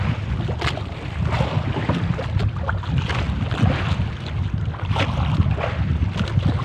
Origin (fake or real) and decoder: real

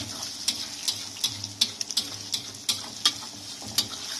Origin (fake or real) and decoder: real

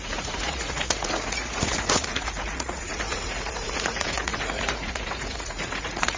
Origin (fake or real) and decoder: fake, vocoder, Vocos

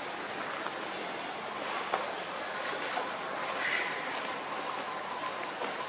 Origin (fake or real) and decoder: real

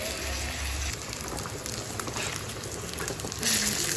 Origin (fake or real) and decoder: real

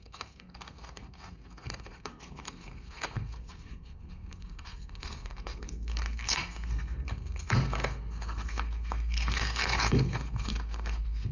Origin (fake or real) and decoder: fake, codec, SNAC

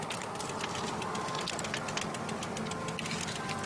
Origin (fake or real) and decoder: real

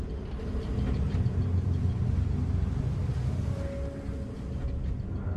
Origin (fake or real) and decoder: real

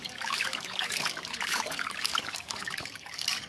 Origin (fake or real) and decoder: fake, codec, DAC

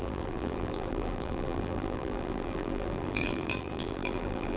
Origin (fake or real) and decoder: fake, vocoder, BigVGAN v2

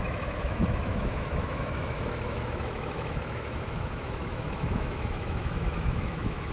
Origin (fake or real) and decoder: fake, autoencoder, DAC-VAE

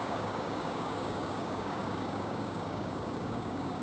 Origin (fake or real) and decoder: fake, codec, DAC